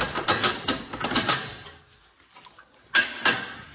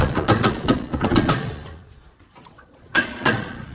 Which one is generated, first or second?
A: second